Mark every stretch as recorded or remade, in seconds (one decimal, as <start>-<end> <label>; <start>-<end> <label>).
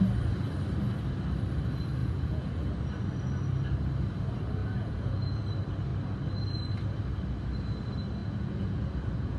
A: 0.0-2.0 recorded; 2.0-2.7 remade; 2.7-4.6 recorded; 4.6-5.4 remade; 5.4-8.2 recorded; 8.2-9.4 remade